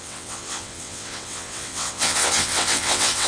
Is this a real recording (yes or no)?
no